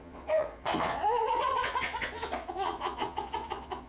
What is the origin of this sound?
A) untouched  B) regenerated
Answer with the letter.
B